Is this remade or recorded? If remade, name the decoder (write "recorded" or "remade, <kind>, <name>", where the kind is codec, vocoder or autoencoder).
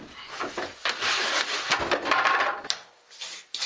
recorded